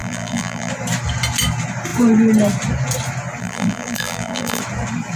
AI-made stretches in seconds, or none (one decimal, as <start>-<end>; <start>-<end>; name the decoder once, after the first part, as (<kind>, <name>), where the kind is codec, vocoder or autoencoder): 0.0-0.7 (vocoder, BigVGAN v2); 3.4-4.6